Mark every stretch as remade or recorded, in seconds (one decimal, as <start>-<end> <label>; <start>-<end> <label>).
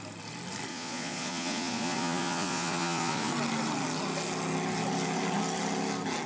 0.0-0.7 recorded; 0.7-3.3 remade; 3.3-6.3 recorded